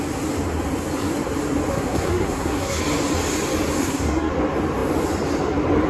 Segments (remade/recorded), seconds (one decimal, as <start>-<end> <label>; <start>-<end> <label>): 0.0-1.7 recorded; 1.7-2.8 remade; 2.8-3.8 recorded; 3.8-4.3 remade; 4.3-5.9 recorded